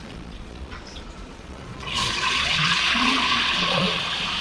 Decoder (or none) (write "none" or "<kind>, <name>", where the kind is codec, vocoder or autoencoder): vocoder, Vocos